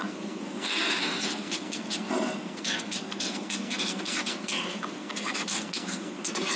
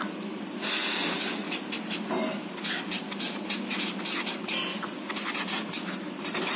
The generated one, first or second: first